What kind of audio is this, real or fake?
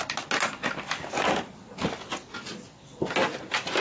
real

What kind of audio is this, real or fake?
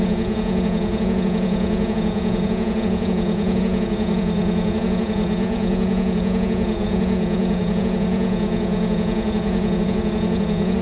fake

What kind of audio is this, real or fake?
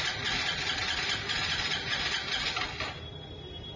real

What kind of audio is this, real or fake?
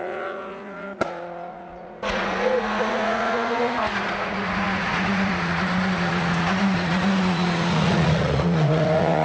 fake